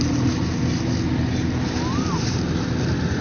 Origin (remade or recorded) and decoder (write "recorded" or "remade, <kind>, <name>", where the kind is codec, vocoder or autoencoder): recorded